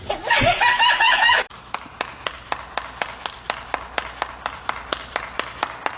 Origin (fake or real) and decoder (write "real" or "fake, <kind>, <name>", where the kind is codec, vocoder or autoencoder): real